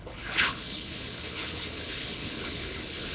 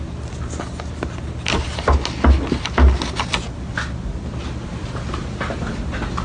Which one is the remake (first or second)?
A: first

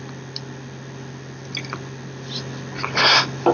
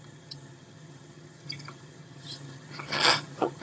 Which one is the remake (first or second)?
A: second